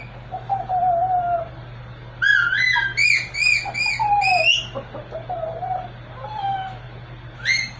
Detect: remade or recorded recorded